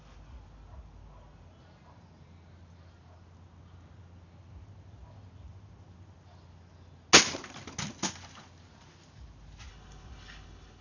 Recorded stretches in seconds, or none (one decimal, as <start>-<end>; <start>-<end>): 0.0-9.7